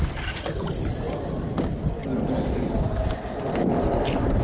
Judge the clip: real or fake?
real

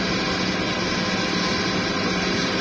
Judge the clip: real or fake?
real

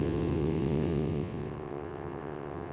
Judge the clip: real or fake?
fake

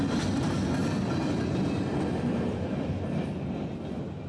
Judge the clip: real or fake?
real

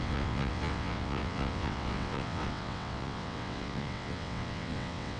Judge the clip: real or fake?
fake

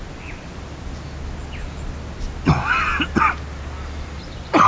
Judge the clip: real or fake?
real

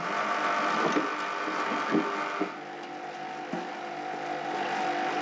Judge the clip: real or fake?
real